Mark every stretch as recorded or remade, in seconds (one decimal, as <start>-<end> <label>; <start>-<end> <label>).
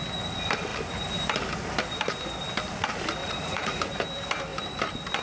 0.0-3.2 recorded; 3.2-3.8 remade; 3.8-5.2 recorded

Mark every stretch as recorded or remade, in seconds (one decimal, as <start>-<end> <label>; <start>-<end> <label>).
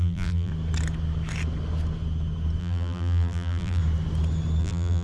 0.0-0.5 remade; 0.5-2.6 recorded; 2.6-3.8 remade; 3.8-4.6 recorded; 4.6-5.0 remade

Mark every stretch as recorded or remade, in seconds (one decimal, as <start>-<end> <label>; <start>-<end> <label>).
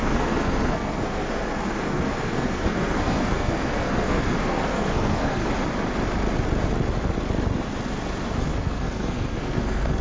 0.0-5.4 remade; 5.4-8.4 recorded; 8.4-10.0 remade